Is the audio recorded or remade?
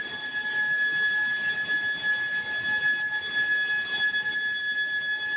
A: recorded